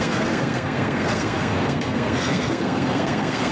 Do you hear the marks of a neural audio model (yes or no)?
yes